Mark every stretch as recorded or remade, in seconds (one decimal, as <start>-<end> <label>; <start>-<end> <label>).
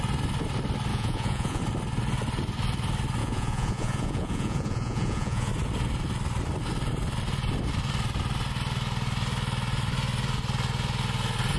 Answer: 0.0-0.9 recorded; 0.9-1.6 remade; 1.6-3.2 recorded; 3.2-5.5 remade; 5.5-11.6 recorded